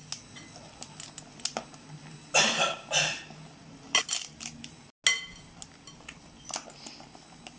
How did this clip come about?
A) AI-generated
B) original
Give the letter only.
B